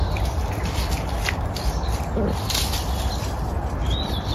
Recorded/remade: recorded